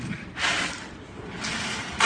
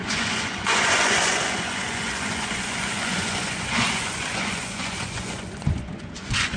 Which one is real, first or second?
first